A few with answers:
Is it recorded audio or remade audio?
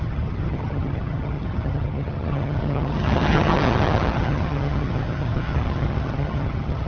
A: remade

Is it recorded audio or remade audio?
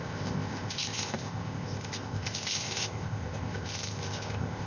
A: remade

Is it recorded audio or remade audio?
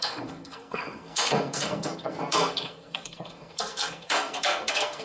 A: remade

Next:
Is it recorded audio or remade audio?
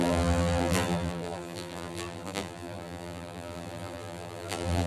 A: remade